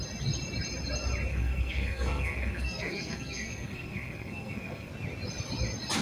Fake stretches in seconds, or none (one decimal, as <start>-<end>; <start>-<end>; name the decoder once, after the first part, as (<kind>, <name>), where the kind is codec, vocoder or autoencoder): 1.3-4.9 (codec, SNAC)